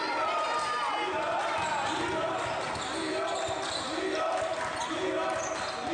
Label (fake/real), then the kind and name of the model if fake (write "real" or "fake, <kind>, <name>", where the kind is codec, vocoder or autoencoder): real